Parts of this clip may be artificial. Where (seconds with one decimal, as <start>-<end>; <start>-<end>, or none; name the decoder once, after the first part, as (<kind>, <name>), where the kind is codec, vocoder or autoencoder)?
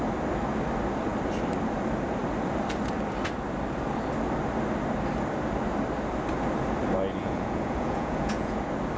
7.2-8.6 (vocoder, Vocos)